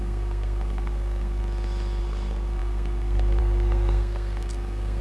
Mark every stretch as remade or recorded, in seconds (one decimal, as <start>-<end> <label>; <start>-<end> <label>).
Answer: 0.0-1.4 remade; 1.4-2.0 recorded; 2.0-5.0 remade